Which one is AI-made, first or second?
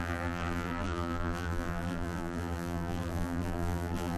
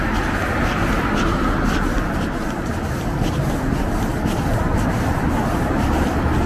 first